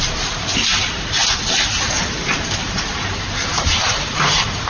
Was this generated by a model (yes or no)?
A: yes